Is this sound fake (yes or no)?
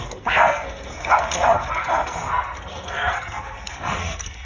yes